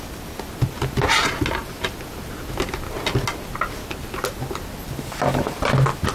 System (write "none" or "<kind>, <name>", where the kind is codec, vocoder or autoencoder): none